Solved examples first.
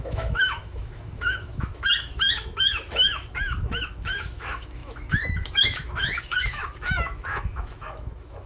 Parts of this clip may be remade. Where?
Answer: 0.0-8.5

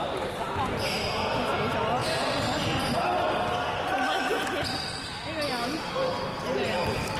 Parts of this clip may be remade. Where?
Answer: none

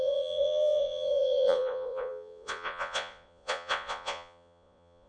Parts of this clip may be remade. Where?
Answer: 0.0-5.1